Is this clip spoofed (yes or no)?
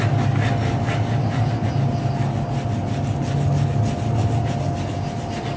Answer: no